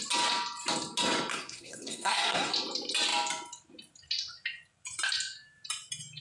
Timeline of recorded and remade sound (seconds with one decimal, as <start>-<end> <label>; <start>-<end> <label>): 0.0-1.3 recorded; 1.3-2.5 remade; 2.5-6.2 recorded